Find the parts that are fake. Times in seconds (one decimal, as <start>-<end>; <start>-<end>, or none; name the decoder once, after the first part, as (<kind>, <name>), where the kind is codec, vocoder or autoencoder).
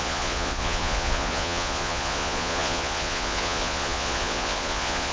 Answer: 0.0-5.1 (vocoder, Vocos)